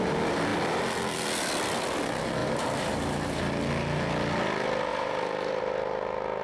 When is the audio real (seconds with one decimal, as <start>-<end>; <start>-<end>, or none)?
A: 0.0-2.4; 3.4-4.9; 5.6-6.4